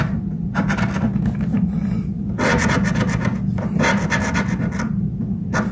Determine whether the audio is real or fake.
real